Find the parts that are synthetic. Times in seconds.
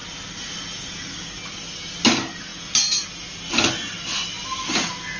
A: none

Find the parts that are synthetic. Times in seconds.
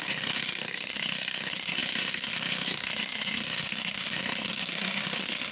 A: 0.0-5.5 (codec, SNAC)